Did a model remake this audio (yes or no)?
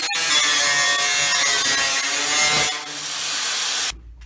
no